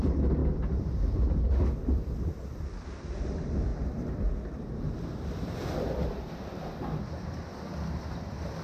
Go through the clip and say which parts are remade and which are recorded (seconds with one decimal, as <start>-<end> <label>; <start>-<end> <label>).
0.0-3.7 remade; 3.7-6.3 recorded; 6.3-8.6 remade

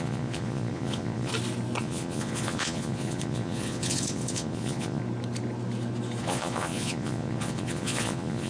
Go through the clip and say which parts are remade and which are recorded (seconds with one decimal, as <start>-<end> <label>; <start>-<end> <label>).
0.0-1.3 remade; 1.3-1.8 recorded; 1.8-5.0 remade; 5.0-6.2 recorded; 6.2-8.5 remade

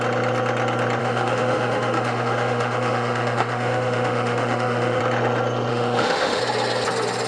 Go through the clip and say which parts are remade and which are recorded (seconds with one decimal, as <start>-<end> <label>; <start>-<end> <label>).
0.0-1.0 recorded; 1.0-5.0 remade; 5.0-5.7 recorded; 5.7-6.4 remade; 6.4-7.3 recorded

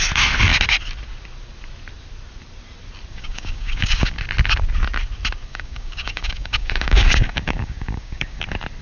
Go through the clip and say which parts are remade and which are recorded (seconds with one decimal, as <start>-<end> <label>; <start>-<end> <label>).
0.0-3.1 recorded; 3.1-4.2 remade; 4.2-5.5 recorded; 5.5-8.4 remade; 8.4-8.8 recorded

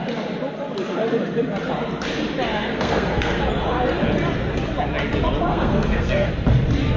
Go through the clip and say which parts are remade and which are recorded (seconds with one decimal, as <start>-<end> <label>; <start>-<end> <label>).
0.0-2.5 recorded; 2.5-3.4 remade; 3.4-5.5 recorded; 5.5-6.3 remade; 6.3-7.0 recorded

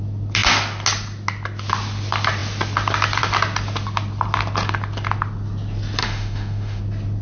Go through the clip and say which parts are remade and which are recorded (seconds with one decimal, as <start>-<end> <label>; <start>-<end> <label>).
0.0-6.0 recorded; 6.0-6.8 remade; 6.8-7.2 recorded

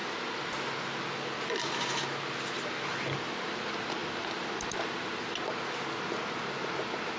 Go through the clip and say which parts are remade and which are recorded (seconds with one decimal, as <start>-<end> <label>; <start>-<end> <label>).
0.0-7.2 recorded